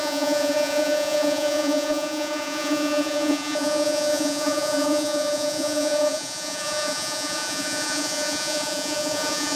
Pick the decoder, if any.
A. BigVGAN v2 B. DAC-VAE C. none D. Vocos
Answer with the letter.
D